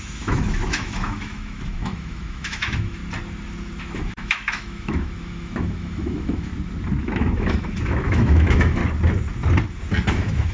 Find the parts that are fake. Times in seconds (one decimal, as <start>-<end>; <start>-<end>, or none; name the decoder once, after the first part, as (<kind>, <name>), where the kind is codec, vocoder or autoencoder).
0.0-3.0 (autoencoder, DAC-VAE); 3.8-6.5; 7.0-8.8; 10.1-10.5